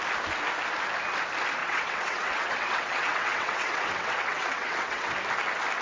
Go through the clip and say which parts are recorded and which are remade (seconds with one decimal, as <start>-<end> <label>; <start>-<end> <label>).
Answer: 0.0-1.6 recorded; 1.6-5.1 remade; 5.1-5.8 recorded